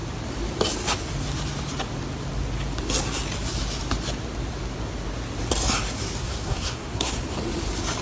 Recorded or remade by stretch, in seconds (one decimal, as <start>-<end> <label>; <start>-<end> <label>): 0.0-6.2 recorded; 6.2-7.1 remade; 7.1-8.0 recorded